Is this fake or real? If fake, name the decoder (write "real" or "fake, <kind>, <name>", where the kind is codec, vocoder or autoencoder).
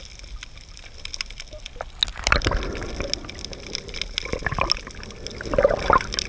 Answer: real